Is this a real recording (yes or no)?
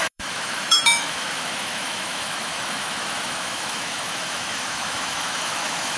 no